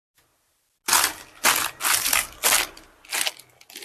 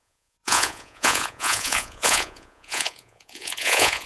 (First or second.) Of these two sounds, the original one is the first